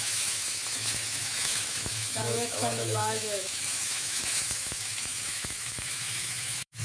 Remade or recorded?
remade